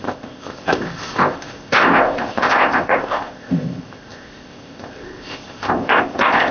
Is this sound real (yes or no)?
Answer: no